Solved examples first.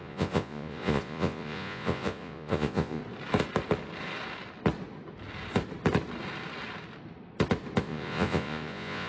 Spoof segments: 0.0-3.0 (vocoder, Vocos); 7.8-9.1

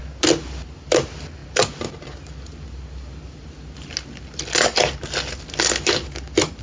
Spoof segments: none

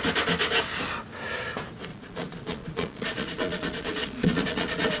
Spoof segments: 1.9-5.0 (vocoder, Vocos)

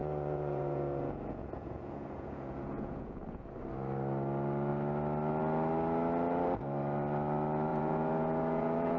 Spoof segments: 0.0-3.4 (vocoder, Vocos); 7.7-9.0

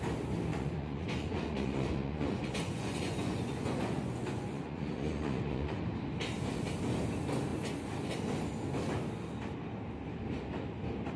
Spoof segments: 0.5-5.8 (vocoder, Vocos)

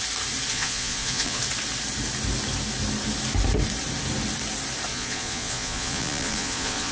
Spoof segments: 0.5-1.4 (vocoder, Vocos); 4.9-6.9

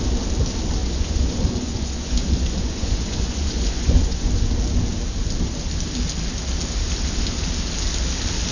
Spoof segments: 0.8-4.3 (vocoder, Vocos)